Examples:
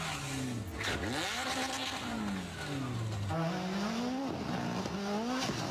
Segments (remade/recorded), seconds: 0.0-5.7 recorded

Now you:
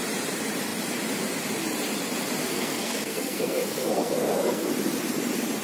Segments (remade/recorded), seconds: 0.0-2.4 recorded; 2.4-4.7 remade; 4.7-5.6 recorded

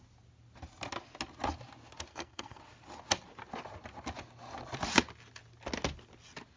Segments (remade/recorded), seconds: 0.0-2.1 recorded; 2.1-2.6 remade; 2.6-6.6 recorded